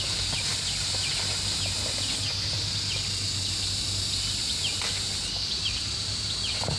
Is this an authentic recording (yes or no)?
yes